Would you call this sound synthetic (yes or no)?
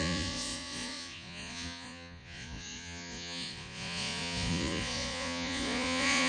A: yes